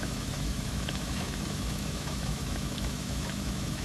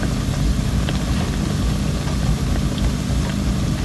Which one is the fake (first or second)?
first